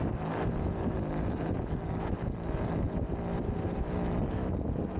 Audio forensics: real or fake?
real